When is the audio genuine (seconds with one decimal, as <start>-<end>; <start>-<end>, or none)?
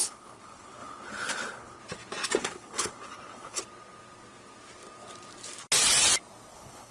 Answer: 1.8-2.4; 3.6-6.5